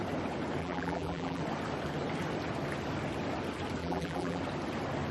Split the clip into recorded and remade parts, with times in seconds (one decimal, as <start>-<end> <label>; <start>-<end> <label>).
0.0-0.6 recorded; 0.6-1.4 remade; 1.4-3.8 recorded; 3.8-4.4 remade; 4.4-5.1 recorded